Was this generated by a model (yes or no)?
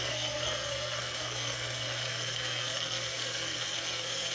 yes